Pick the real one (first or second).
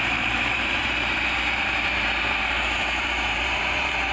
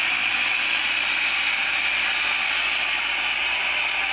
second